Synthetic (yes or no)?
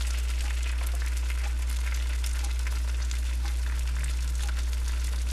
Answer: no